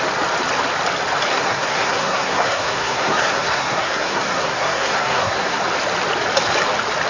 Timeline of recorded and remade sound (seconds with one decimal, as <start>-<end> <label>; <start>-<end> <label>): 0.0-1.3 recorded; 1.3-5.6 remade; 5.6-7.1 recorded